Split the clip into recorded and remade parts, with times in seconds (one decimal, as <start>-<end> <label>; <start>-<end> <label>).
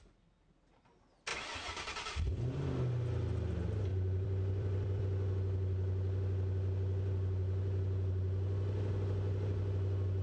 0.0-1.3 recorded; 1.3-2.3 remade; 2.3-3.9 recorded; 3.9-5.0 remade; 5.0-10.2 recorded